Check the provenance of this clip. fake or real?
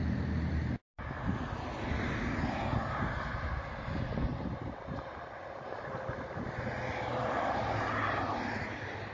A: real